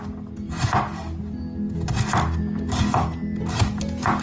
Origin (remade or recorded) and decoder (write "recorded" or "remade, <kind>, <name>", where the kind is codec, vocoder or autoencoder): recorded